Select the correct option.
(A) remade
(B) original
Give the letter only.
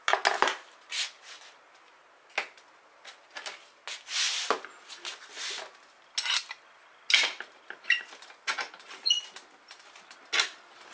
B